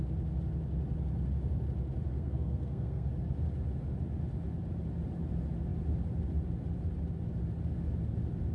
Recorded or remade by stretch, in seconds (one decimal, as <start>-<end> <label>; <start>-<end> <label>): 0.0-2.1 recorded; 2.1-3.1 remade; 3.1-8.5 recorded